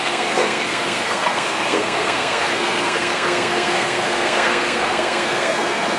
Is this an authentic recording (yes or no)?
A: no